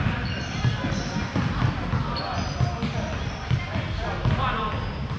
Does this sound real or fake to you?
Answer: real